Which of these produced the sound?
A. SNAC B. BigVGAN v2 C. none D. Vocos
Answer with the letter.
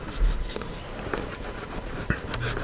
B